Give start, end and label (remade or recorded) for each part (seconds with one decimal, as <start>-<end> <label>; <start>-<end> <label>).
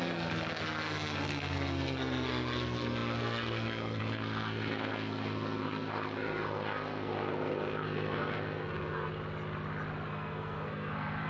0.0-9.1 remade; 9.1-10.1 recorded; 10.1-11.3 remade